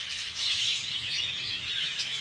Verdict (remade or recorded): remade